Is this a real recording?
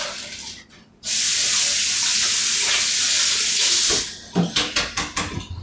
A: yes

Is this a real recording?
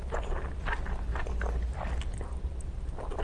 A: yes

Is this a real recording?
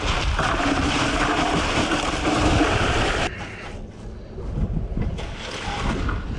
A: yes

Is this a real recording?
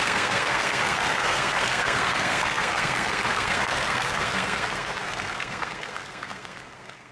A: no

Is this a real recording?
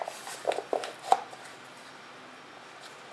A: yes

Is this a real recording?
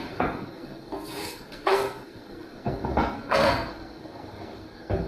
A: no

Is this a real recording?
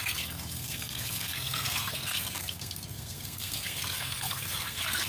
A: no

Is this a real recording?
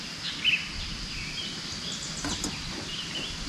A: yes